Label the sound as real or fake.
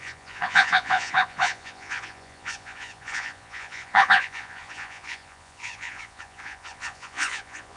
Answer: fake